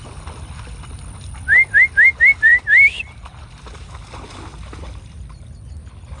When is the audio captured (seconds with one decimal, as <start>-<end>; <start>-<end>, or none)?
0.0-6.2